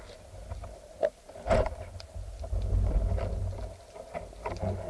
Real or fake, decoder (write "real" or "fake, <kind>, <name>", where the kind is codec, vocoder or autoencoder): real